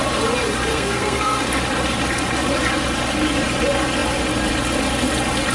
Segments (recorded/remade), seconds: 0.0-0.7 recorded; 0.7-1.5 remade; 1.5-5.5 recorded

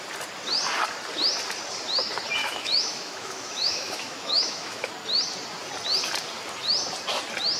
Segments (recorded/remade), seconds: 0.0-2.4 recorded; 2.4-4.9 remade; 4.9-7.6 recorded

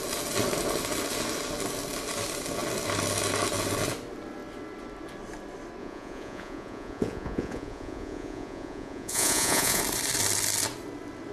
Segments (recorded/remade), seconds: 0.0-5.8 recorded; 5.8-9.8 remade; 9.8-11.3 recorded